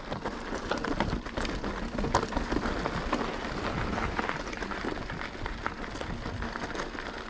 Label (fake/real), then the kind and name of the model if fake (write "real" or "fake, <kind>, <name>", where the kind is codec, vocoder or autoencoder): real